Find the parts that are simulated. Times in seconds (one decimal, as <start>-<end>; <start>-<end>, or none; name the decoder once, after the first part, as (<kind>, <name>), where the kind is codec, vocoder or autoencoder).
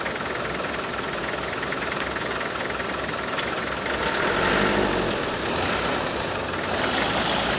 5.2-5.9 (vocoder, BigVGAN v2)